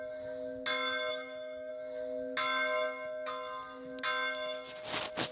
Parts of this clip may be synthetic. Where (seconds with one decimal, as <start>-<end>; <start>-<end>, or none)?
1.1-1.7